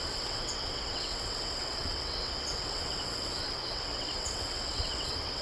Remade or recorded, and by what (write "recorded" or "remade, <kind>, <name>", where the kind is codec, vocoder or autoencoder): remade, vocoder, WaveNeXt